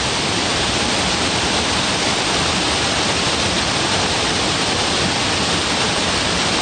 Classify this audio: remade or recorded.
remade